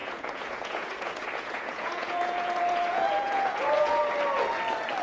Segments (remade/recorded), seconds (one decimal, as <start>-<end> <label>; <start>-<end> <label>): 0.0-4.0 remade; 4.0-5.0 recorded